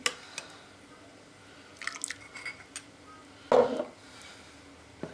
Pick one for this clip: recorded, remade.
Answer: recorded